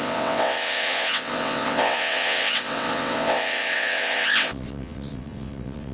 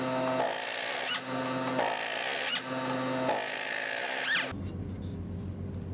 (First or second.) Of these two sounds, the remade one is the first